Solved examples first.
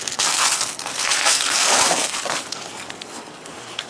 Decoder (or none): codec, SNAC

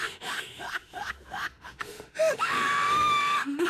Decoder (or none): autoencoder, DAC-VAE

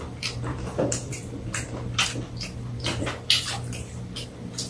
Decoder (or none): vocoder, BigVGAN v2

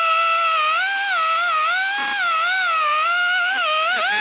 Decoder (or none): none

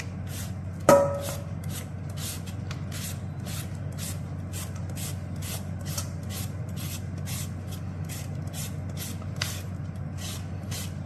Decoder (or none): none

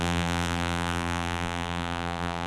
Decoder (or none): vocoder, BigVGAN v2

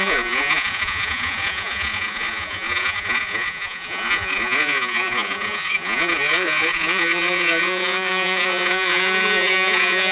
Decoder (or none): vocoder, Vocos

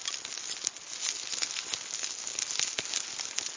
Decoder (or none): none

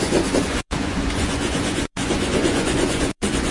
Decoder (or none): vocoder, Vocos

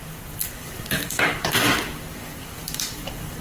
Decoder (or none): codec, DAC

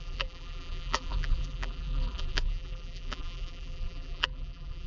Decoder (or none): vocoder, BigVGAN v2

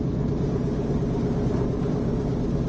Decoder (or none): none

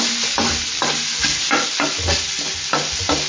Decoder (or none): none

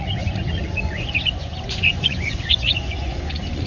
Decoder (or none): vocoder, Vocos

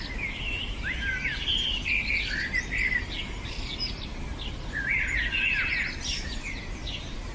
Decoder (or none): none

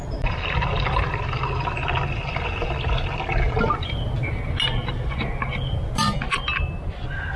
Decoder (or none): none